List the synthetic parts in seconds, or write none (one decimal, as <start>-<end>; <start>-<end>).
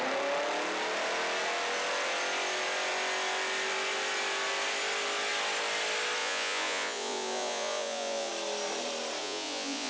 6.2-8.3; 9.2-9.9